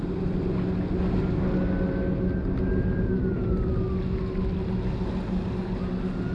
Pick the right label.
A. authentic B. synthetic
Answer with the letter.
A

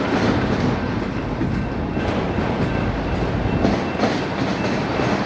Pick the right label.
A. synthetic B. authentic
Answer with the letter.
B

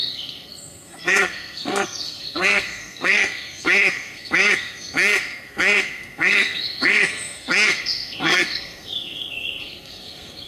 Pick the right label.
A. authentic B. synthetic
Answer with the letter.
B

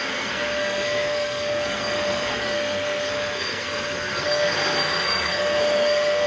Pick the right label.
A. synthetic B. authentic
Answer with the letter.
A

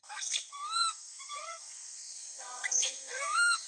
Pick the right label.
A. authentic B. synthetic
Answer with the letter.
B